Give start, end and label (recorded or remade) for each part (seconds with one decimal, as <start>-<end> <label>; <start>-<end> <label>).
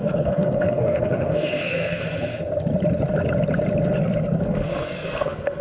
0.0-2.0 remade; 2.0-4.4 recorded; 4.4-5.6 remade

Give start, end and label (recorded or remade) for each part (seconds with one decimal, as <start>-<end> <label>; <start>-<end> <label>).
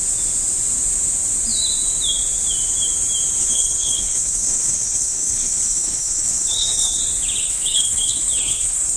0.0-3.4 recorded; 3.4-7.0 remade; 7.0-7.4 recorded; 7.4-9.0 remade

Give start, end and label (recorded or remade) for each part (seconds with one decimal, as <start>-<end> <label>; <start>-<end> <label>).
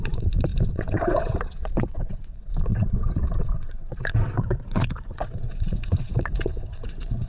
0.0-7.3 remade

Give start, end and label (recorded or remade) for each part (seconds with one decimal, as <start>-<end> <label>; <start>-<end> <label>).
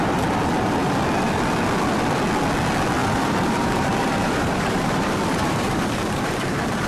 0.0-3.0 recorded; 3.0-6.9 remade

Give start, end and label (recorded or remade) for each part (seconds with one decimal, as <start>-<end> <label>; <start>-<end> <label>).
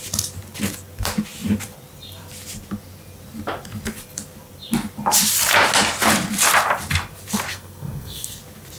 0.0-7.5 recorded; 7.5-8.4 remade; 8.4-8.8 recorded